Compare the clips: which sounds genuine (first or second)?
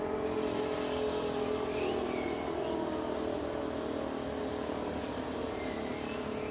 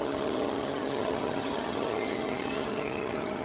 first